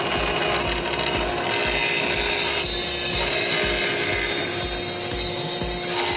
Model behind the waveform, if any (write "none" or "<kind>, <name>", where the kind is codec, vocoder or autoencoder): none